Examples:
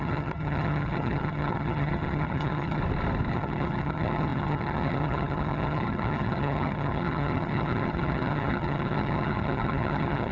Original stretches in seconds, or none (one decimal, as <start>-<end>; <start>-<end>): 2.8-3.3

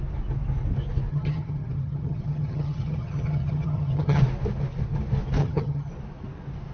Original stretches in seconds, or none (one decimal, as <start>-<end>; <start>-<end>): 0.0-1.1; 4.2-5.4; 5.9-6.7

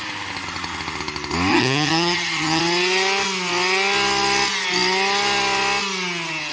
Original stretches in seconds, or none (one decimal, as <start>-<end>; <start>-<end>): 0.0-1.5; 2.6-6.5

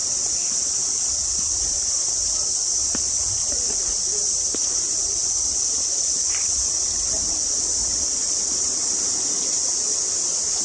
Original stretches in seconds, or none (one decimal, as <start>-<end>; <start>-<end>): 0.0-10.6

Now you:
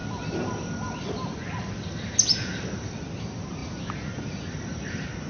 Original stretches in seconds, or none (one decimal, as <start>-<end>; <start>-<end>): 0.0-5.3

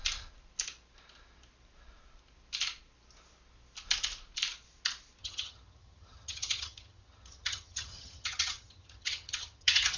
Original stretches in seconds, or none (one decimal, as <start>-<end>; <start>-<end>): 0.0-5.2